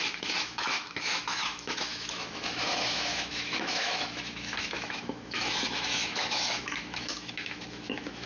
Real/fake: fake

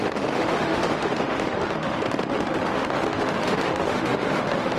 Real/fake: fake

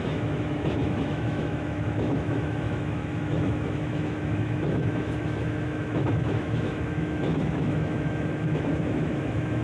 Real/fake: fake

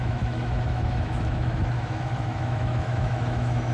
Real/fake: fake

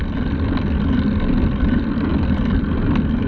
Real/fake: real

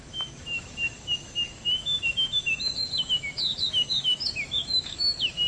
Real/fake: fake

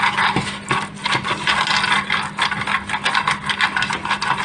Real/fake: real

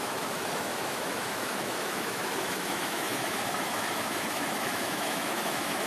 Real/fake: fake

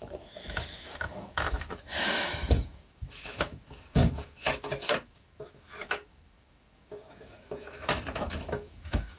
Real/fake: fake